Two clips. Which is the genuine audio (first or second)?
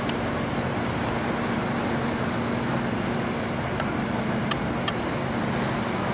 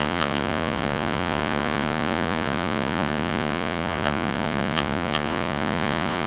first